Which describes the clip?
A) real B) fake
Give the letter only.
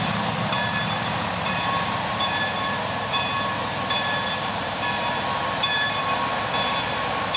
B